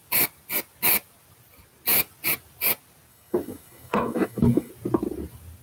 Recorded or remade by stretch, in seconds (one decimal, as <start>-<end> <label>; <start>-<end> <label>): 0.0-3.1 recorded; 3.1-4.7 remade; 4.7-5.6 recorded